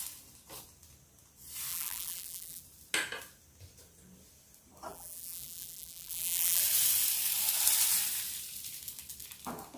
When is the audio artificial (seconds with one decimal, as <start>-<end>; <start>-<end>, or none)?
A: 1.7-2.6; 4.9-6.6